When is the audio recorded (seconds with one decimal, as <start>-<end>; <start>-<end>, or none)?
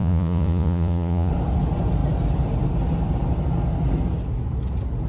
1.3-5.1